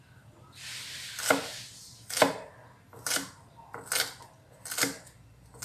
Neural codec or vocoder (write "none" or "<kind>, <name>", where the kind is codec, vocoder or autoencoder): none